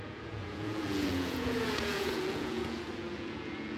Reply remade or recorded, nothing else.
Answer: remade